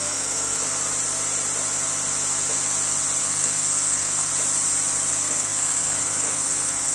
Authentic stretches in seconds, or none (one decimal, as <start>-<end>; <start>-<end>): 0.6-3.2; 4.3-5.1